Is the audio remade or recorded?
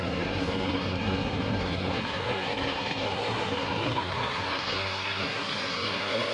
remade